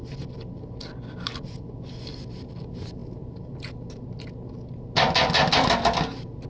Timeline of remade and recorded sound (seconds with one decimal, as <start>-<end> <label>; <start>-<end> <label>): 0.0-6.5 recorded